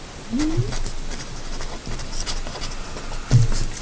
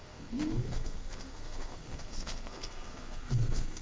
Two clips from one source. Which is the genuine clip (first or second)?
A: first